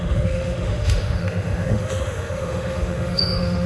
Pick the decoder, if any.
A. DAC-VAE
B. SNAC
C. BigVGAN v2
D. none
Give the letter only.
A